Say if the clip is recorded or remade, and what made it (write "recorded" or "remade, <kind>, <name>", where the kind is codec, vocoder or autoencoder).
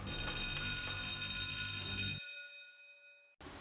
recorded